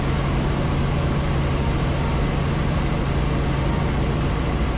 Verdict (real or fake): real